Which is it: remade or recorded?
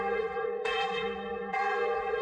remade